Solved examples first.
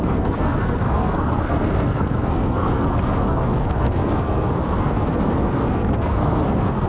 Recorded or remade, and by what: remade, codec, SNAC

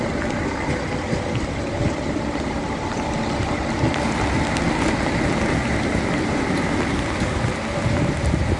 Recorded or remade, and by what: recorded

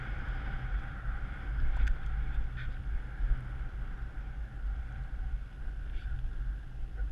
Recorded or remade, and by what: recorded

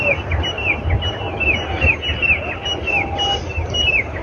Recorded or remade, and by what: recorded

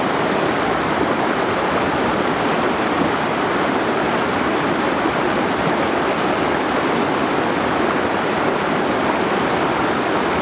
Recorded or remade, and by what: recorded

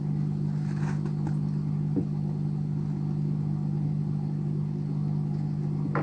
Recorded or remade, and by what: recorded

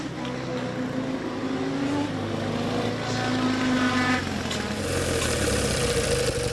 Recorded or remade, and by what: recorded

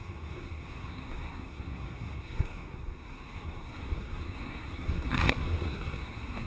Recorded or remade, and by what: remade, codec, SNAC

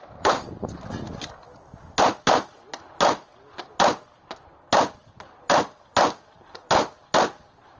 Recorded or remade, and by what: recorded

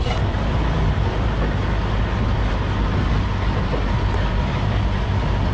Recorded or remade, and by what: recorded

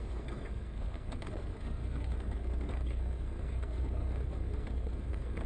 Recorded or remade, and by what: remade, codec, SNAC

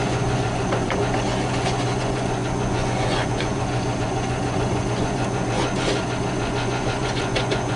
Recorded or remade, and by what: remade, vocoder, Vocos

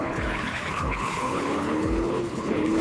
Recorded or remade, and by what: remade, codec, HILCodec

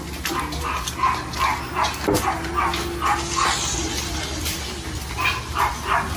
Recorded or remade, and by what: recorded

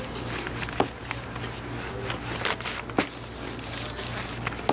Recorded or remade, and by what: recorded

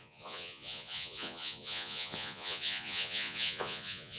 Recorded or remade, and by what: remade, vocoder, Vocos